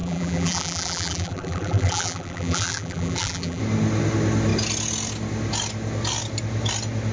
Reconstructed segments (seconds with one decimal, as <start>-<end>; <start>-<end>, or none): 0.0-3.6